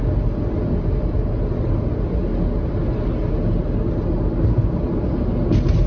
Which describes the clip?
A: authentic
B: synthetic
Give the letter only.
A